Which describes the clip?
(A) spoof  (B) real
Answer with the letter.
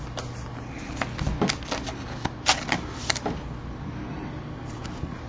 B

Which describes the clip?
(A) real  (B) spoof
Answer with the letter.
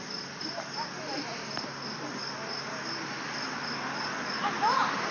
A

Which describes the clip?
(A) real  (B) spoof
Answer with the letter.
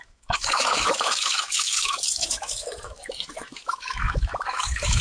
B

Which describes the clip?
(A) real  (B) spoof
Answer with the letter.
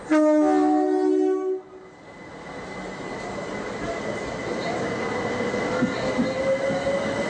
A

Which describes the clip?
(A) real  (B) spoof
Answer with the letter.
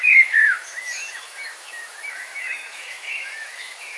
B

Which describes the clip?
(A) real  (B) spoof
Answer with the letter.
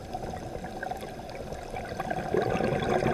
A